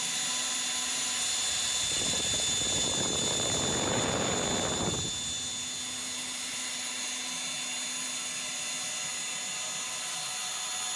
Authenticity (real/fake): real